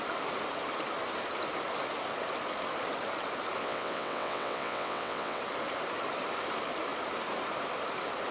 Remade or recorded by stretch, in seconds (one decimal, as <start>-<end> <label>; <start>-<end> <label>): 0.0-3.6 recorded; 3.6-5.4 remade; 5.4-8.3 recorded